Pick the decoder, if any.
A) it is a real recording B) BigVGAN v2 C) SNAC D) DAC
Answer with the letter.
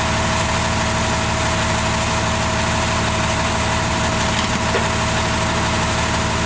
A